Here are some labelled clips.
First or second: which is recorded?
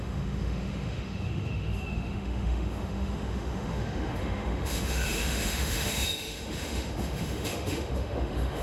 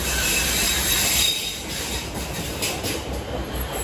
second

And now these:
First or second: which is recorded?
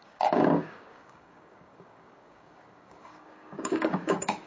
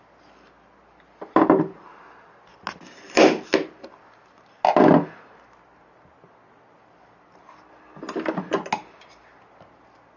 second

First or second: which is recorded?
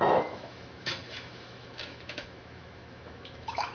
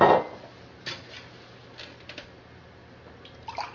second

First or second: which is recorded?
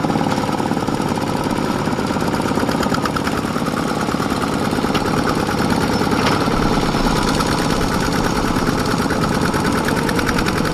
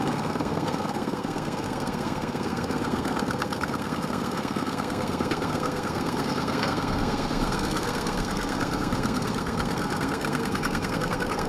first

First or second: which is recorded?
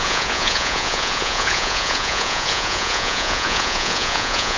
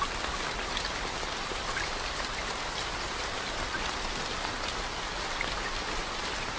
second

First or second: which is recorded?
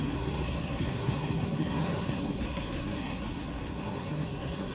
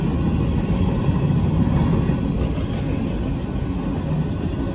second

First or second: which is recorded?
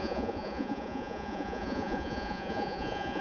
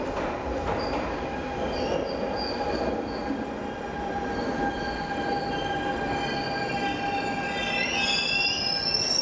second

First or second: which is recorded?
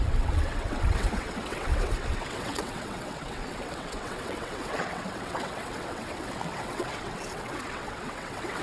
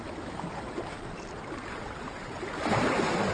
second